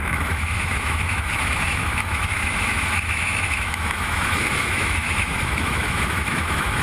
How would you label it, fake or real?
fake